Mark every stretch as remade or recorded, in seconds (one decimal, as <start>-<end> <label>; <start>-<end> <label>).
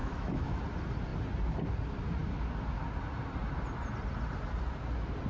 0.0-0.6 remade; 0.6-5.3 recorded